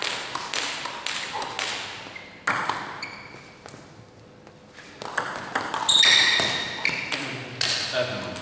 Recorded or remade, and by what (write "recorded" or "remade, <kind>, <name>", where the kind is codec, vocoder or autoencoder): recorded